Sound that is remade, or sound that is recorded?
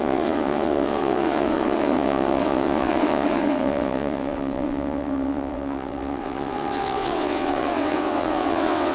remade